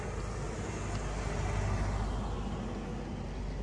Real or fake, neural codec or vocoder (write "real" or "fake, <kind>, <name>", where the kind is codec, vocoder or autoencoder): real